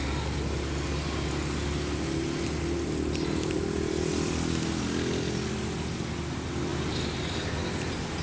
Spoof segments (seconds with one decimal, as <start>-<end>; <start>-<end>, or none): none